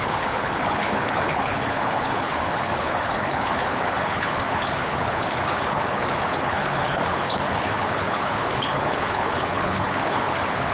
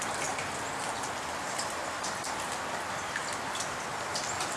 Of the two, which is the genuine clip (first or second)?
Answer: second